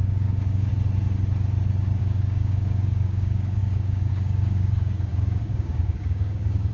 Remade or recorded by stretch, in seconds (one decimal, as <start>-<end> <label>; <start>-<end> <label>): 0.0-0.7 remade; 0.7-2.0 recorded; 2.0-6.7 remade